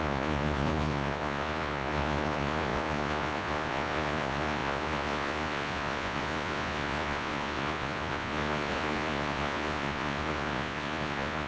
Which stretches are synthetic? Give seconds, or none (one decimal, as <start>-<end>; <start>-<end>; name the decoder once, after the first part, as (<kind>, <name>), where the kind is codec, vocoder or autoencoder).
0.0-11.5 (vocoder, Vocos)